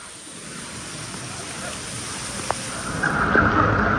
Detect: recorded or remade recorded